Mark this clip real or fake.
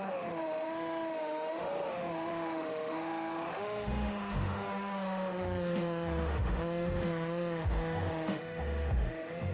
fake